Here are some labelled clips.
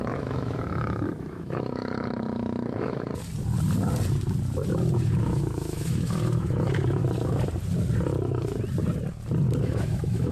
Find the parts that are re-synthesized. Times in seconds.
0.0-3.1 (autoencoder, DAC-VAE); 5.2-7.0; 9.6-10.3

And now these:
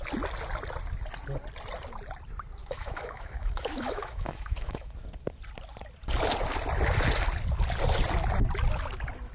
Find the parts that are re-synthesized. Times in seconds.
2.6-4.9 (autoencoder, DAC-VAE)

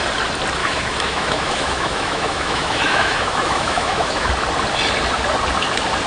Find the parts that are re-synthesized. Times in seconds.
0.6-4.3 (autoencoder, DAC-VAE)

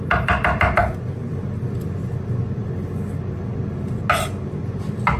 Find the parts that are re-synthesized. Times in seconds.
none

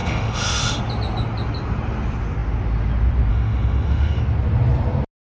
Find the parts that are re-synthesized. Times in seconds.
0.0-0.8 (autoencoder, DAC-VAE); 3.3-4.2

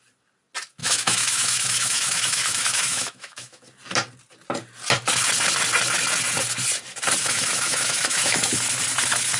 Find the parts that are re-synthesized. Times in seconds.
0.8-3.6 (autoencoder, DAC-VAE); 7.2-8.6

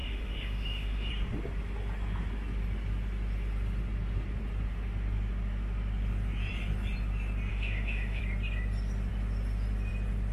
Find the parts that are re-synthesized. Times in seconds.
0.0-1.1 (autoencoder, DAC-VAE); 7.5-8.2

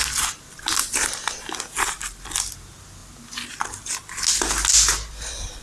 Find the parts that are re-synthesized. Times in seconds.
none